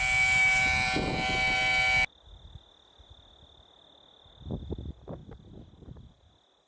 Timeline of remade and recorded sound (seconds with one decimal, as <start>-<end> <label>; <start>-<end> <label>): 0.0-6.7 recorded